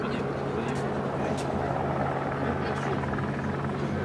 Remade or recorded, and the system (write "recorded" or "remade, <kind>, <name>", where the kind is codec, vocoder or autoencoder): recorded